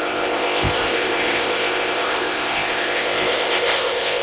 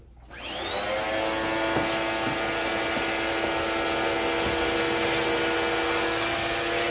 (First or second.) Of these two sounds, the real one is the second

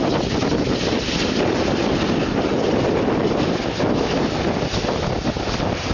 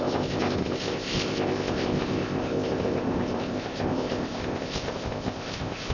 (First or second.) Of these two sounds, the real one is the first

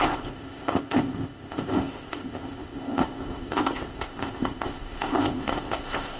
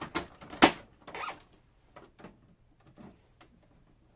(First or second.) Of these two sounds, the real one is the second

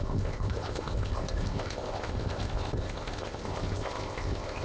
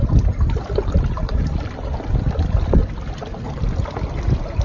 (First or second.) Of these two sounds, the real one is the second